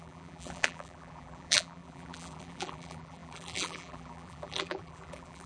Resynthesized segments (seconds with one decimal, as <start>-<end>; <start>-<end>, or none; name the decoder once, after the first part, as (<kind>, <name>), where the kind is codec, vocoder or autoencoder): 0.0-5.5 (vocoder, BigVGAN v2)